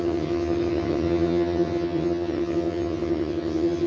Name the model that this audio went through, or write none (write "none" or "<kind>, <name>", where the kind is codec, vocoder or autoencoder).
vocoder, HiFi-GAN